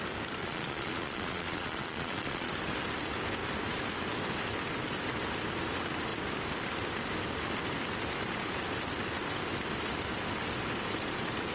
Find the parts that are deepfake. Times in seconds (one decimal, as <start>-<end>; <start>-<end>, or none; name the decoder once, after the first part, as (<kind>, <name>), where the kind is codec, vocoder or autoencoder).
0.4-2.5 (vocoder, Vocos)